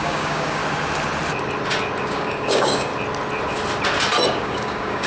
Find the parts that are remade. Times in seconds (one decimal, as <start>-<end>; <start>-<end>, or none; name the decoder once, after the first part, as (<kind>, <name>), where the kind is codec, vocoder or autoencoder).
0.0-0.6 (codec, DAC); 2.0-2.9; 4.3-5.1